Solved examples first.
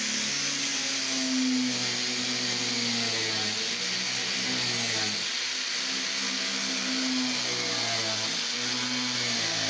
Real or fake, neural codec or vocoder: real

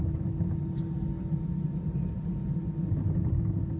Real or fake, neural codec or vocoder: real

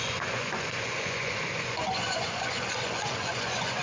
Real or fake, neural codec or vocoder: fake, vocoder, Vocos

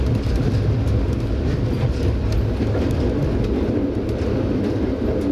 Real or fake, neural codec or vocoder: real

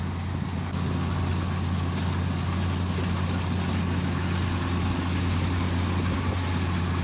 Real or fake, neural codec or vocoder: real